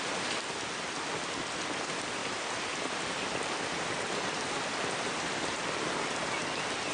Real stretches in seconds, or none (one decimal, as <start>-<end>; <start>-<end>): 0.0-6.9